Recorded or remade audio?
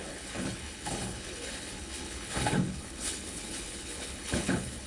remade